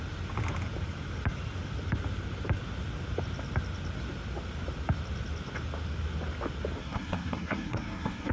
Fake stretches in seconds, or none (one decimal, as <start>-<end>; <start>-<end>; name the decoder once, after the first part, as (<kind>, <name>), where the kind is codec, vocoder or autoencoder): 6.8-8.3 (codec, SNAC)